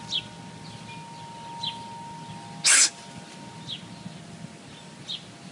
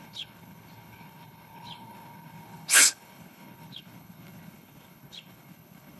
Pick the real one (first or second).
first